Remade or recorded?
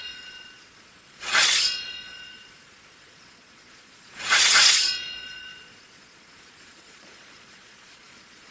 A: remade